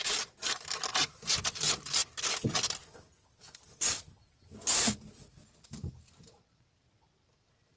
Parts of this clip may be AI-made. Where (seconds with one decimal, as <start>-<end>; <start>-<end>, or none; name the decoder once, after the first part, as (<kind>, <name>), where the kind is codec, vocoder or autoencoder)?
none